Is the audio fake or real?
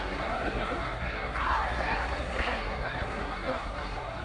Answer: fake